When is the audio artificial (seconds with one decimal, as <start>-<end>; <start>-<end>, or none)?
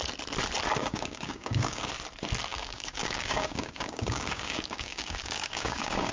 0.8-1.9; 2.5-6.1